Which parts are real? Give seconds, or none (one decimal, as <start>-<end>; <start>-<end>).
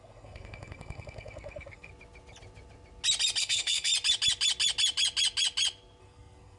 1.9-3.4; 3.9-6.0